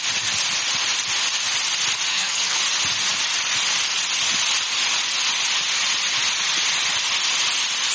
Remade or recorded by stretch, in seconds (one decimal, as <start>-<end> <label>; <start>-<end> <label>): 0.0-2.1 recorded; 2.1-2.6 remade; 2.6-7.9 recorded